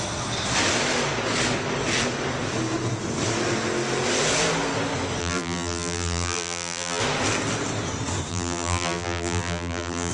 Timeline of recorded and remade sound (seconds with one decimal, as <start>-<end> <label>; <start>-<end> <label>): 0.0-5.2 recorded; 5.2-7.0 remade; 7.0-8.3 recorded; 8.3-10.1 remade